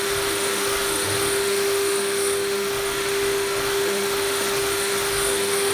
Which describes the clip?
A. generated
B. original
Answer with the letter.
A